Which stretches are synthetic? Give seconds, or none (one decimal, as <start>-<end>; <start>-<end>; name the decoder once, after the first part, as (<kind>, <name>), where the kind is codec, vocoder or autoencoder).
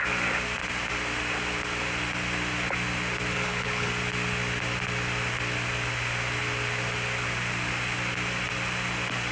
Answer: 3.3-3.9 (codec, HILCodec)